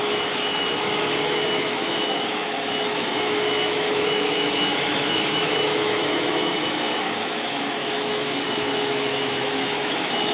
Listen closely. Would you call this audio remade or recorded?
remade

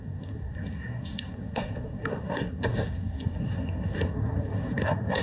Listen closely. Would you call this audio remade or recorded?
remade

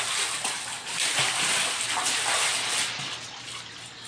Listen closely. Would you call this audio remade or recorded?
recorded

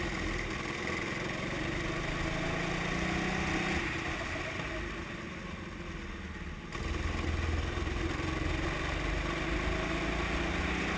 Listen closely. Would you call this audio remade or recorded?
recorded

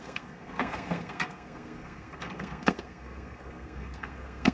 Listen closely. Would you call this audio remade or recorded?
remade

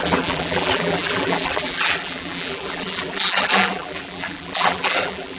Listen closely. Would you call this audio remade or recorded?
remade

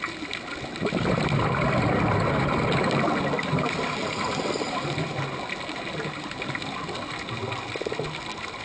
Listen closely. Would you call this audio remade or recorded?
recorded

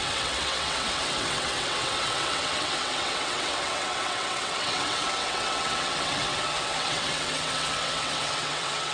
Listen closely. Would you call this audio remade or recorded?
remade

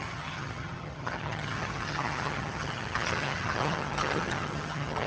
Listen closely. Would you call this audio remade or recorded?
remade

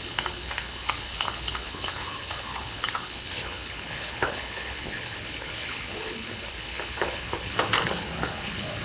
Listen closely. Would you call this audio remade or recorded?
remade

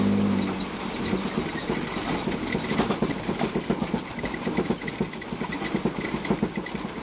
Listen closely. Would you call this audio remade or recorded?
recorded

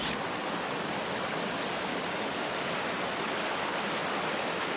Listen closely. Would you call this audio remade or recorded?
recorded